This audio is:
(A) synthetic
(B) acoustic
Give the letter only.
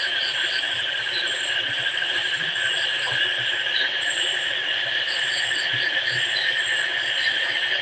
B